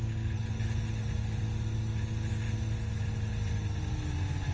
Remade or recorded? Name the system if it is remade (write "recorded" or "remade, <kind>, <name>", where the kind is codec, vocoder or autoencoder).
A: recorded